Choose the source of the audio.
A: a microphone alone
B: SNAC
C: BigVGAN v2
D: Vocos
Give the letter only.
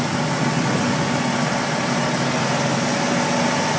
A